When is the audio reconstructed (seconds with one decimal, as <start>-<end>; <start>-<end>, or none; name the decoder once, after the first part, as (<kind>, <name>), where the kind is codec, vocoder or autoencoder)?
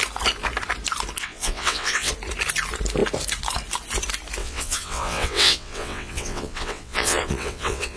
1.2-2.1 (vocoder, WaveNeXt); 4.4-8.0